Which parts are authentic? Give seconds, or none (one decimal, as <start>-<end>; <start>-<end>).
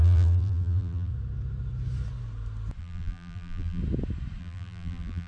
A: 1.1-2.8; 3.8-4.4